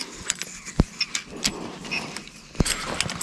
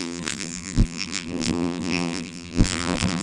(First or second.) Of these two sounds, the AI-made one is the second